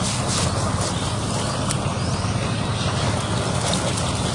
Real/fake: real